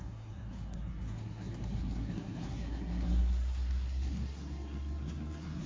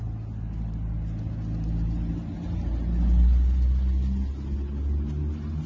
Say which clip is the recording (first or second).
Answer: second